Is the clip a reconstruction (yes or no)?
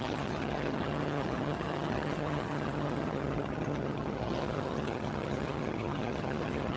yes